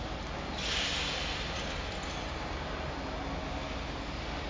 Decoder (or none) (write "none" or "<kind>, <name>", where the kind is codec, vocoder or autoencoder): none